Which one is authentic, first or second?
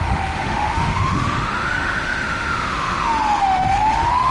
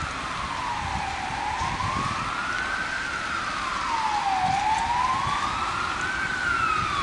second